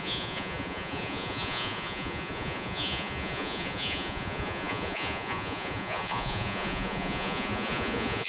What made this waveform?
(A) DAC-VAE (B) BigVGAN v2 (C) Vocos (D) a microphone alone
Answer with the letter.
C